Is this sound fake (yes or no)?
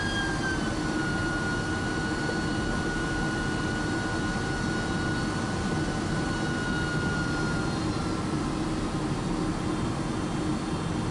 no